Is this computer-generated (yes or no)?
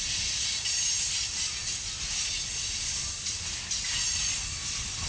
no